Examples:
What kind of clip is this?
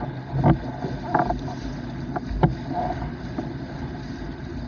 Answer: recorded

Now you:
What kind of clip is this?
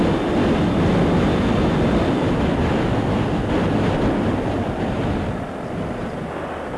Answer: recorded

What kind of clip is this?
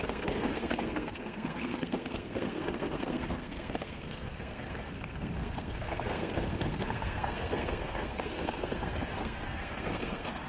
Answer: remade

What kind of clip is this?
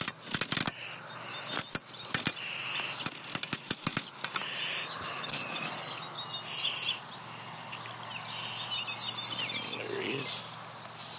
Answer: recorded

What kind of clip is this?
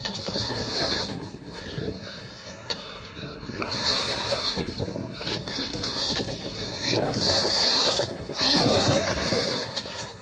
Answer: remade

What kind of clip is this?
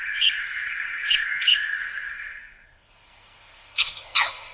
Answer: remade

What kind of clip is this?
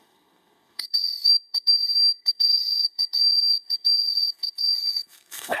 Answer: remade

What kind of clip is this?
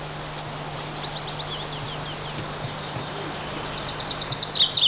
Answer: recorded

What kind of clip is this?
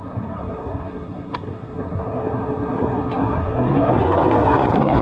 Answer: remade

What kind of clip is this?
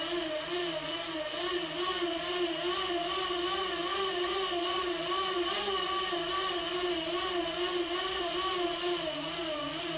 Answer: recorded